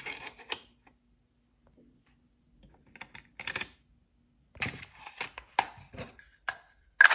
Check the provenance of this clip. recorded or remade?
recorded